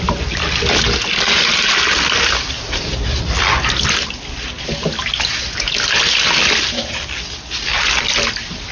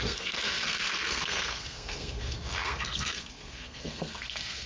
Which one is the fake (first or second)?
second